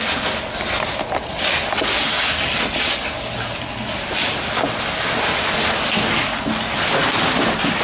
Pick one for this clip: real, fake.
real